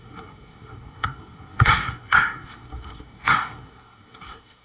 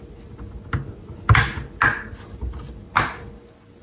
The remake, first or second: first